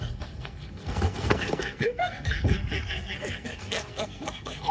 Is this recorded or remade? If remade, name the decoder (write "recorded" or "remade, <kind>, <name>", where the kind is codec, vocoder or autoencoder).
remade, codec, SNAC